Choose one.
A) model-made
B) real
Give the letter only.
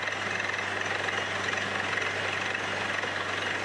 B